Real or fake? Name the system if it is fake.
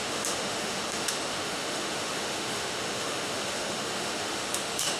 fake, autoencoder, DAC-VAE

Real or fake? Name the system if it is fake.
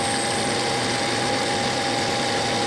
real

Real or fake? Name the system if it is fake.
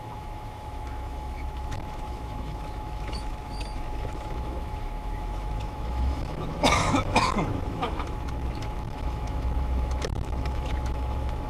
fake, autoencoder, DAC-VAE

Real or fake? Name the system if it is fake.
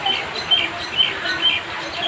real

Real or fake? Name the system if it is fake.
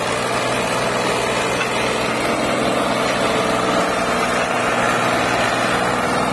real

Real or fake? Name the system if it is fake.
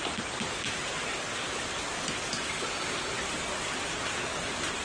real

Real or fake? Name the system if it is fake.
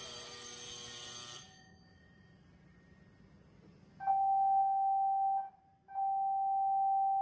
real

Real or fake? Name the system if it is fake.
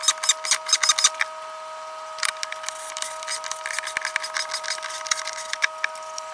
real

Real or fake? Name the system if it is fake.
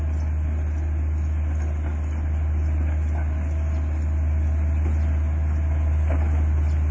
real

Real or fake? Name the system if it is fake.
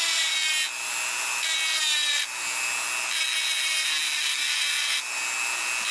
real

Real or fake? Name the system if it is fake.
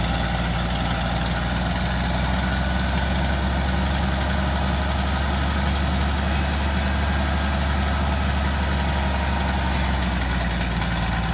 real